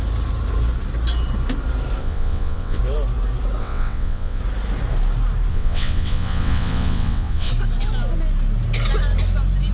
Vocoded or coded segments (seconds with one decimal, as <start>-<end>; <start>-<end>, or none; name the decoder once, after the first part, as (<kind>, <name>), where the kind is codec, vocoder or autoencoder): 2.0-2.8 (vocoder, WaveNeXt); 3.6-4.4; 5.5-7.5